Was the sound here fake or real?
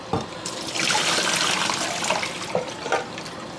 real